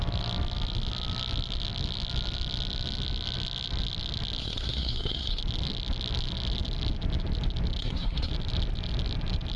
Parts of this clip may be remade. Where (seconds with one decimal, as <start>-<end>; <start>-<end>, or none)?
4.4-5.4; 7.8-8.3